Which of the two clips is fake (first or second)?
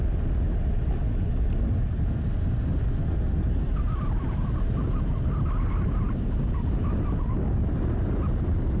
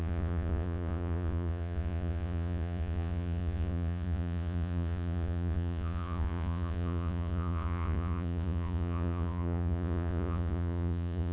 second